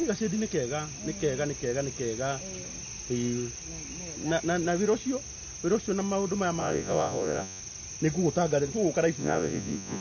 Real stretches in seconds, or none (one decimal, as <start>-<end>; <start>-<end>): 0.0-6.6; 7.6-9.2